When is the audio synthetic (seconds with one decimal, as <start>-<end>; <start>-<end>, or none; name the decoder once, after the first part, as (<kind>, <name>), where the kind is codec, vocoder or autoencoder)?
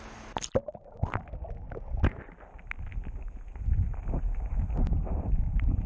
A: none